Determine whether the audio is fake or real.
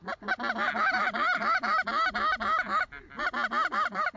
fake